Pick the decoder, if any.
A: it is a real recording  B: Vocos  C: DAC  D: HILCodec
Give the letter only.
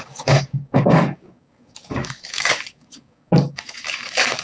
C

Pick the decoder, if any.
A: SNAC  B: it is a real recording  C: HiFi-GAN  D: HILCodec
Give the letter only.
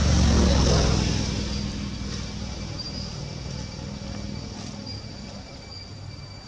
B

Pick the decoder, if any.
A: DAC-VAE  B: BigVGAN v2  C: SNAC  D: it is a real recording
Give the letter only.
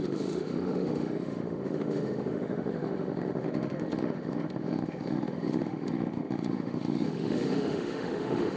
A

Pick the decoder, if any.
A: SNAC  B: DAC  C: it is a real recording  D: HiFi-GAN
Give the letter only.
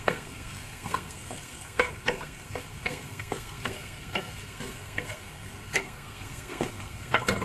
A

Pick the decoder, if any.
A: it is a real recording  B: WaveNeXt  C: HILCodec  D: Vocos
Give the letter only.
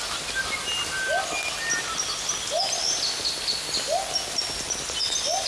A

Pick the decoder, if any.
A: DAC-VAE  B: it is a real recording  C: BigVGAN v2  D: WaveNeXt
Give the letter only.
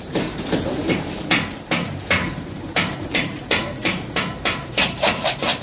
C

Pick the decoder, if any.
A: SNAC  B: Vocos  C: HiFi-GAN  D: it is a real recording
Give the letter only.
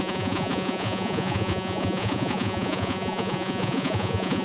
B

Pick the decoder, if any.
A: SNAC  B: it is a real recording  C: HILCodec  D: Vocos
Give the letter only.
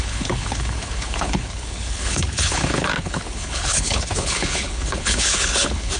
C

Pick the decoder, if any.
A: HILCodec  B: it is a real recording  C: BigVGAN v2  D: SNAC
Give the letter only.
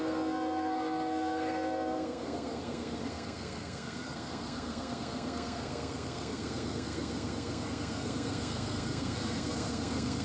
D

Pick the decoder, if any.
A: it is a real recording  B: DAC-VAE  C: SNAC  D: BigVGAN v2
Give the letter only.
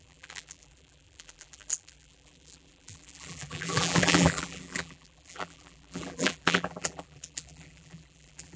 D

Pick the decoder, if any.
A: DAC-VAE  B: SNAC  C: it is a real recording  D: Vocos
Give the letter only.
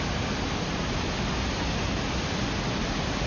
C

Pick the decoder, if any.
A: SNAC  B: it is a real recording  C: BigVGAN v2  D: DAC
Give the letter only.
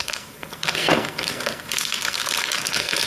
A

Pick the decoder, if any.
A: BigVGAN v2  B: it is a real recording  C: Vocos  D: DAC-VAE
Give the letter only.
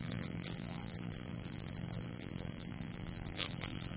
A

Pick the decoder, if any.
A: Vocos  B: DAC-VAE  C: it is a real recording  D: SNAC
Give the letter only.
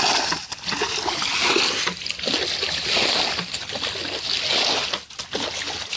C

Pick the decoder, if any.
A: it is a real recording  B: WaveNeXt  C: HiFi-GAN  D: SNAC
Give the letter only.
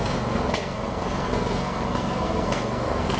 D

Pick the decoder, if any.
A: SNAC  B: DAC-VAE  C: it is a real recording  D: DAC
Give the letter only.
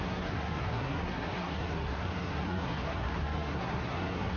A